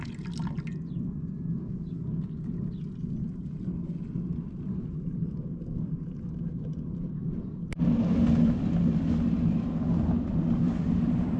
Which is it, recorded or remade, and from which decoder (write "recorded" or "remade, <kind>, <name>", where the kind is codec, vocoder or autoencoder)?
recorded